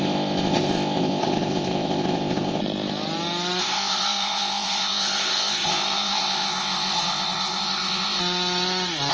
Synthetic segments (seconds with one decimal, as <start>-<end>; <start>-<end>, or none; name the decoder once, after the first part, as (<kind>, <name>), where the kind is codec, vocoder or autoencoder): 0.0-2.6 (codec, ZipCodec); 3.6-8.2